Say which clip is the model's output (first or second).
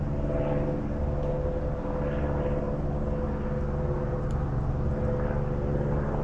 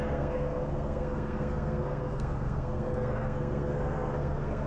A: second